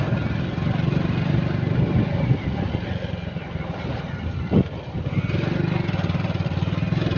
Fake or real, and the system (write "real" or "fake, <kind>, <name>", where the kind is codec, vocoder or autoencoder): real